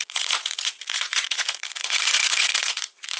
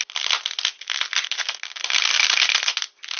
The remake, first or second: first